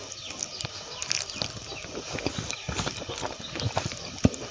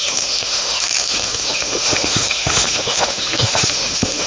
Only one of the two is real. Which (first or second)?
first